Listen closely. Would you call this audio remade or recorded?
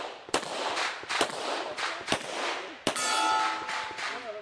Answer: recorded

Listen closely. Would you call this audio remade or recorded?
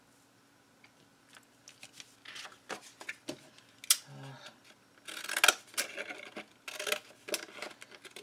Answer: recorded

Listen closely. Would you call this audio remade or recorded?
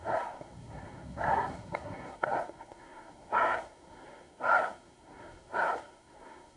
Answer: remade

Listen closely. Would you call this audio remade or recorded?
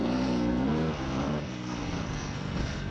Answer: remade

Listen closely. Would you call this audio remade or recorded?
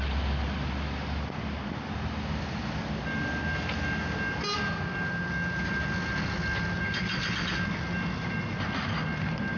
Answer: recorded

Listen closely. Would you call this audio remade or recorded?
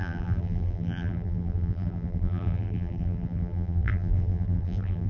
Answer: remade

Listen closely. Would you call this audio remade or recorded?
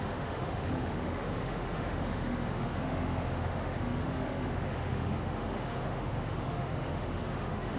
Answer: remade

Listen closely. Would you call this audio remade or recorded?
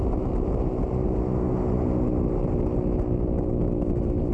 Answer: recorded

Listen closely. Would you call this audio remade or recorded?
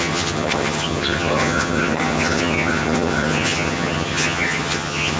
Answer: remade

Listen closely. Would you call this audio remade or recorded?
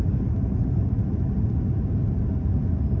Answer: recorded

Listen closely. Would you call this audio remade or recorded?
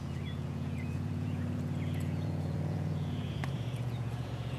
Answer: remade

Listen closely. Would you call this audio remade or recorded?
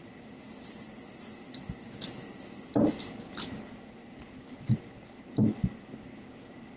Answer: recorded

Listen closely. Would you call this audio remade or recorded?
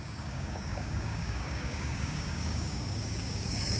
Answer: remade